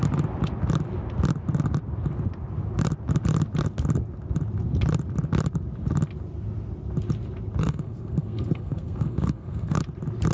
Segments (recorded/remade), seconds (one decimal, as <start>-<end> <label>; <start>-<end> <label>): 0.0-7.6 recorded; 7.6-9.8 remade; 9.8-10.3 recorded

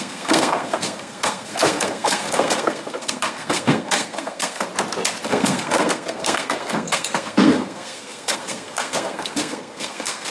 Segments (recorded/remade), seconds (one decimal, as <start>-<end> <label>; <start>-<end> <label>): 0.0-4.7 remade; 4.7-5.2 recorded; 5.2-10.3 remade

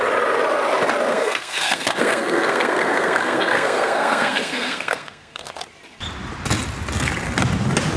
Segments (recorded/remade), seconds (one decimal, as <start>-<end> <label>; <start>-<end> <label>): 0.0-1.1 recorded; 1.1-5.6 remade; 5.6-8.0 recorded

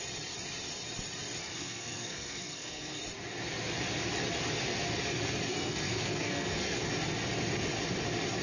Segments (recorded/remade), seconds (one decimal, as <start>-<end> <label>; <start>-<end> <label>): 0.0-1.4 recorded; 1.4-3.0 remade; 3.0-5.5 recorded; 5.5-6.8 remade; 6.8-8.4 recorded